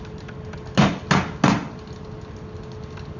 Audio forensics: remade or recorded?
recorded